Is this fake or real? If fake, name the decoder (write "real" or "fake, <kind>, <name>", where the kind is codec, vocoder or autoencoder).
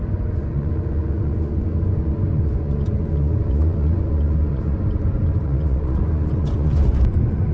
fake, vocoder, Vocos